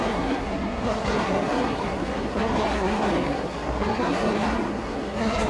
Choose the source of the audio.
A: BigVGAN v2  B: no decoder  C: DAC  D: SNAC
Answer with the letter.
D